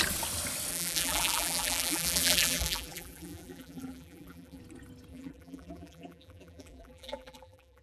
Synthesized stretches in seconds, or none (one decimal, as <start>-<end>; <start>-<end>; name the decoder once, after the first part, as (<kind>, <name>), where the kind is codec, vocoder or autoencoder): 0.7-4.6 (vocoder, BigVGAN v2); 5.1-7.8